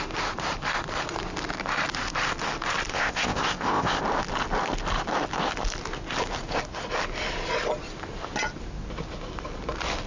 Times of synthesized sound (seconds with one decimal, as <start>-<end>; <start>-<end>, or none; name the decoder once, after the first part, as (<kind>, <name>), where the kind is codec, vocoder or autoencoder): 2.9-4.0 (codec, ZipCodec)